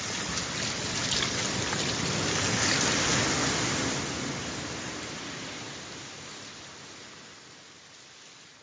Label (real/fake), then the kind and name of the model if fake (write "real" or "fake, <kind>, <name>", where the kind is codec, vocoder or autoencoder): real